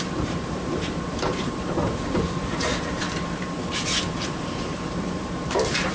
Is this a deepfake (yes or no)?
yes